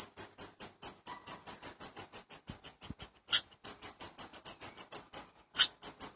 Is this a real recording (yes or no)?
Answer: yes